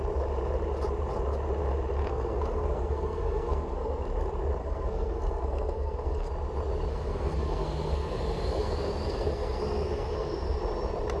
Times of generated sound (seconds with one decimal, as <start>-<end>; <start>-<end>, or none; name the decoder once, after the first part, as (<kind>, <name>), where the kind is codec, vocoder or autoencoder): 2.0-4.0 (codec, SNAC); 4.6-6.3; 6.9-10.6